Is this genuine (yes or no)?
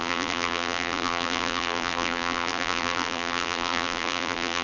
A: no